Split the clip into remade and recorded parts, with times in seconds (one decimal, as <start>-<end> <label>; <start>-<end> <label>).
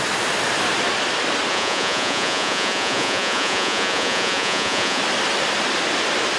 0.0-1.5 recorded; 1.5-5.0 remade; 5.0-6.4 recorded